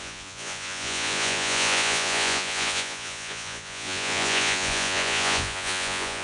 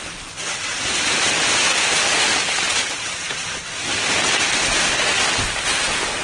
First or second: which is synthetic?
first